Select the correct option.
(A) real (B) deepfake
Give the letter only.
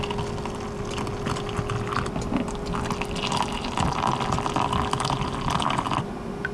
A